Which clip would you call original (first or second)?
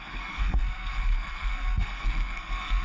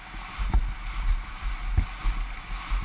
second